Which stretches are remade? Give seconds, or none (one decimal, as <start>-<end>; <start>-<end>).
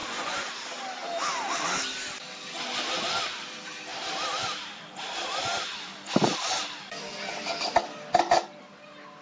0.0-0.6